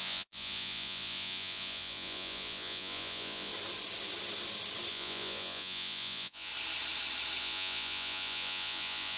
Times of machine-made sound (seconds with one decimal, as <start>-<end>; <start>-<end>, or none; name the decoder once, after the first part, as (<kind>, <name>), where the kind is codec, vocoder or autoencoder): 0.0-3.5 (vocoder, Vocos); 4.9-6.5; 7.4-9.2